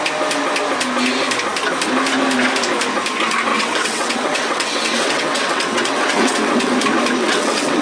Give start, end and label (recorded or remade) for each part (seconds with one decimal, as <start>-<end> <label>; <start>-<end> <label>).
0.0-3.5 recorded; 3.5-6.7 remade; 6.7-7.2 recorded; 7.2-7.8 remade